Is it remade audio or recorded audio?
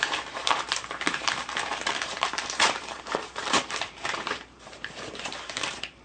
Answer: remade